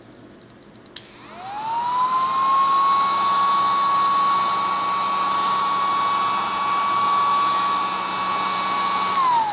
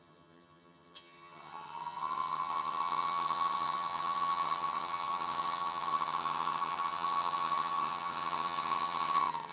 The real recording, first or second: first